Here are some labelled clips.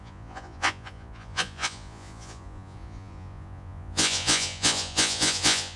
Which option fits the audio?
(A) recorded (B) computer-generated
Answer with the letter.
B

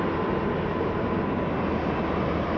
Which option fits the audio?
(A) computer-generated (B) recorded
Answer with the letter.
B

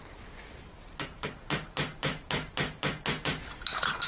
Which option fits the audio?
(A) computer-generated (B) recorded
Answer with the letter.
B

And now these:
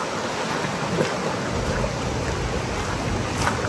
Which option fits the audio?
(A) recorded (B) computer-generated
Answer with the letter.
A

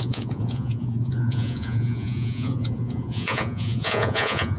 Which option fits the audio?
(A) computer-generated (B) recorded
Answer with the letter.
A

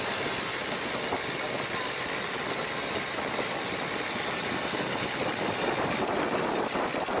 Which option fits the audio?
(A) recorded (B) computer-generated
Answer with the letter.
A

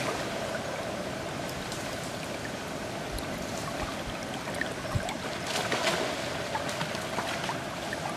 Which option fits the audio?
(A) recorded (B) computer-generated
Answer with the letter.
A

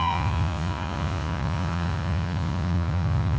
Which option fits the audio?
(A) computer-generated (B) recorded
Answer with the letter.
A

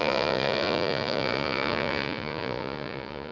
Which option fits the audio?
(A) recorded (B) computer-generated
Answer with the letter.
B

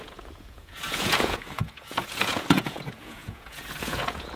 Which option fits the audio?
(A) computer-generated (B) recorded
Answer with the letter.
A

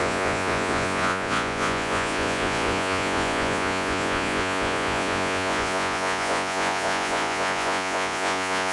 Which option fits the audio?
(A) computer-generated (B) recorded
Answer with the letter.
A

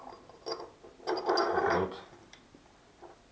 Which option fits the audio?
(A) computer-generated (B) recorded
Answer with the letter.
B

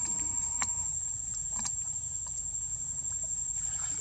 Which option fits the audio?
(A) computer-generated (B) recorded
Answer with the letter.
A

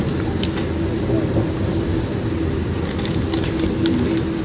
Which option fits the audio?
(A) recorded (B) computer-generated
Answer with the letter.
A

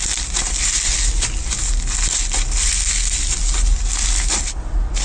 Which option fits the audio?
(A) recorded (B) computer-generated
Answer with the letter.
A